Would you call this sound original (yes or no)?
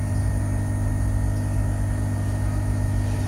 yes